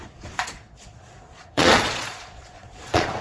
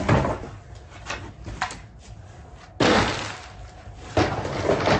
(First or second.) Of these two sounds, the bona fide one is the second